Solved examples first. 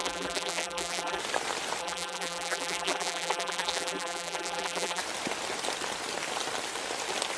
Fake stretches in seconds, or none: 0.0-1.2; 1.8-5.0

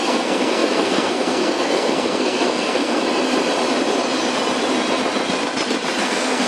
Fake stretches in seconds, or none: 0.0-3.0; 6.0-6.5

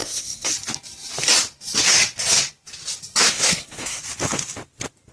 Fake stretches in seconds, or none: 0.0-0.5; 3.2-4.0

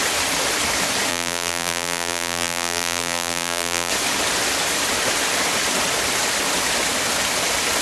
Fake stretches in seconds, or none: 1.1-3.9